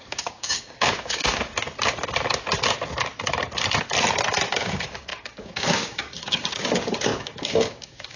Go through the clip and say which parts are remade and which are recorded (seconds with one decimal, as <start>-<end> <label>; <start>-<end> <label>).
0.0-1.5 remade; 1.5-4.5 recorded; 4.5-8.2 remade